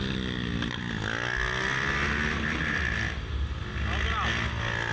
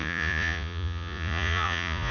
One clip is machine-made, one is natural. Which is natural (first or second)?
first